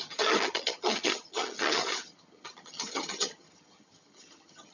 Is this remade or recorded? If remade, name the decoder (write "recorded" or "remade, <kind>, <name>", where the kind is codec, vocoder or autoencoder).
remade, vocoder, HiFi-GAN